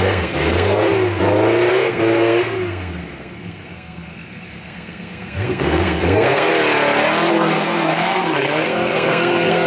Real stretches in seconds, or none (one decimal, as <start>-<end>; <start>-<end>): 0.9-1.7; 6.5-7.3